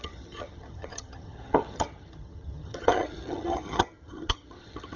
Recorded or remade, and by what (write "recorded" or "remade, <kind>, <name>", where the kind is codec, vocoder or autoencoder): remade, vocoder, HiFi-GAN